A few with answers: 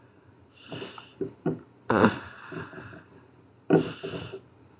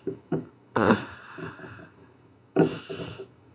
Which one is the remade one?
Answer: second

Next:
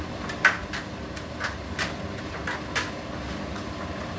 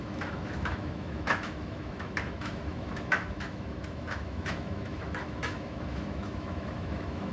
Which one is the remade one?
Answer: second